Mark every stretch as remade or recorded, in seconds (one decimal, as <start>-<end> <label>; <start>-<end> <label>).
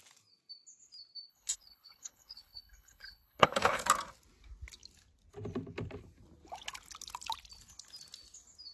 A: 0.0-1.3 recorded; 1.3-3.8 remade; 3.8-8.7 recorded